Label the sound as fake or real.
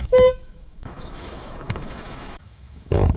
fake